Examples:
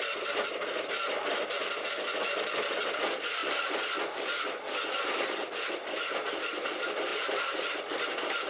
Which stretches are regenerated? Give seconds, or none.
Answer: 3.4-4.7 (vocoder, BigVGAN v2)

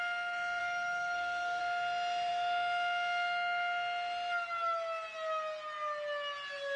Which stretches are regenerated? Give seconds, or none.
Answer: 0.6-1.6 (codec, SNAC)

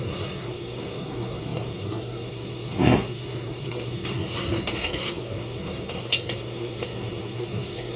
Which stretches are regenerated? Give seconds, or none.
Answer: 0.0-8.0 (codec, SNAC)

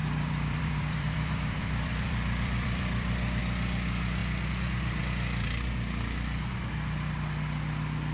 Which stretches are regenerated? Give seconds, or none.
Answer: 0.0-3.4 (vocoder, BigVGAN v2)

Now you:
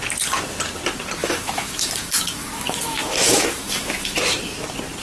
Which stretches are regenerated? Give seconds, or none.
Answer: 1.2-4.2 (autoencoder, DAC-VAE)

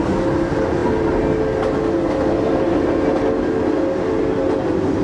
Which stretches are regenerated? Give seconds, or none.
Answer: none